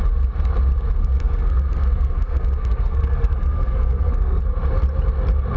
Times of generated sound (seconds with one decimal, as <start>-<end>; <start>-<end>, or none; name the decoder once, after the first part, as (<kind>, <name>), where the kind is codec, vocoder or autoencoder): 1.0-4.4 (codec, SNAC)